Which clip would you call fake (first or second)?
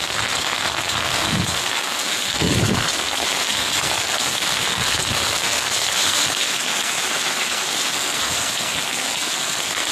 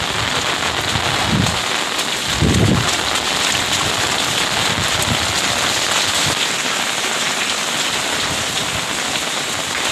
first